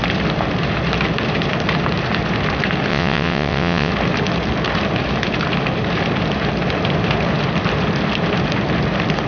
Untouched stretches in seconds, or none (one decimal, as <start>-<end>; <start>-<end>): 0.0-2.9; 3.9-9.3